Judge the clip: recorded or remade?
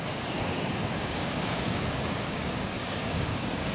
remade